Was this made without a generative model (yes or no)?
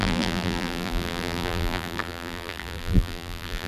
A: no